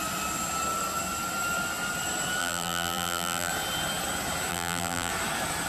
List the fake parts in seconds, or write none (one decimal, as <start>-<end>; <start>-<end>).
2.4-3.5; 4.5-5.1